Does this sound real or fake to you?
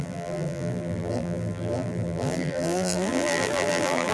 fake